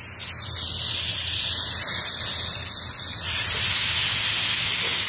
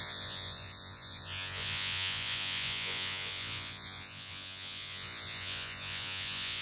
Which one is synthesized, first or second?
second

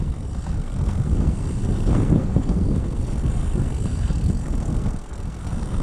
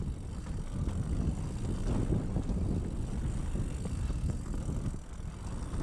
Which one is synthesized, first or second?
first